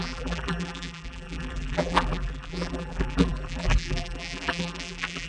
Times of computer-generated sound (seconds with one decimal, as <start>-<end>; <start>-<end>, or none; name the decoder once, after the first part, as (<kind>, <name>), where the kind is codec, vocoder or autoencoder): 0.0-5.3 (vocoder, BigVGAN v2)